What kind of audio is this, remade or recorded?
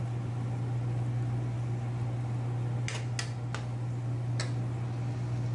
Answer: recorded